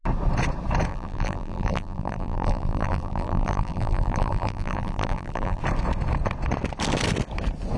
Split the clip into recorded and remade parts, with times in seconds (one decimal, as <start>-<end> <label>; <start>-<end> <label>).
0.0-0.9 recorded; 0.9-5.6 remade; 5.6-7.8 recorded